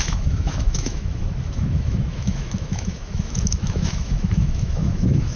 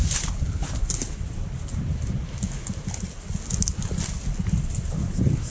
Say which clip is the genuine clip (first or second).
second